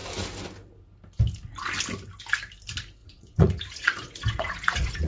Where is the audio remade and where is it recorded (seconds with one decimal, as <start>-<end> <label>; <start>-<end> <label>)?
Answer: 0.0-3.0 recorded; 3.0-5.1 remade